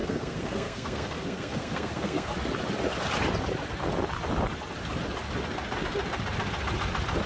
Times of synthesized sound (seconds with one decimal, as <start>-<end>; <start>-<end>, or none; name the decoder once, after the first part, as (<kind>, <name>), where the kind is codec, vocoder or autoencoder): 0.0-2.3 (codec, SNAC)